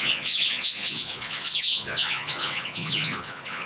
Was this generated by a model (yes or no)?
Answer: yes